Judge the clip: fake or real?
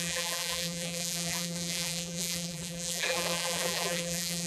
fake